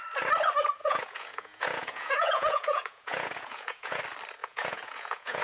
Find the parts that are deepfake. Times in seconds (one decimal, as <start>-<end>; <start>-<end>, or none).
0.8-4.0; 4.4-5.4